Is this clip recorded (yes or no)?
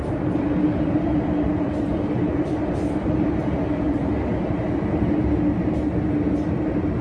yes